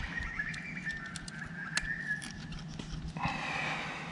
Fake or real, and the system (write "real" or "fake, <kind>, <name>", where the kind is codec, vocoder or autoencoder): real